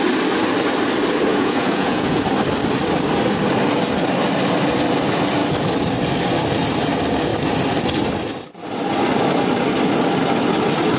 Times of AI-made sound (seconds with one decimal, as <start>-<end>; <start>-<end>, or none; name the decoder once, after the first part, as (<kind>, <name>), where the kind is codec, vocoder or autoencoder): 1.3-2.2 (vocoder, Vocos)